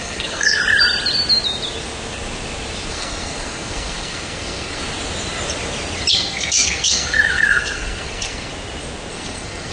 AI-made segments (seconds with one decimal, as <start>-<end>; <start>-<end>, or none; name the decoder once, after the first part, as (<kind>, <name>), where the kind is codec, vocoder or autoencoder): 0.0-0.6 (codec, SNAC); 2.9-4.8; 6.1-8.5; 9.1-9.7